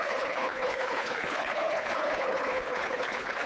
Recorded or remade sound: remade